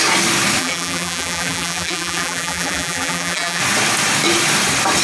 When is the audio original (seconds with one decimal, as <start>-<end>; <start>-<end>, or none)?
0.0-0.6; 3.6-5.0